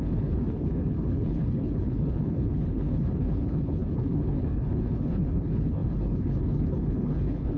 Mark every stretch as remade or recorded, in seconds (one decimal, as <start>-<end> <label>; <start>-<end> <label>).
0.0-7.6 remade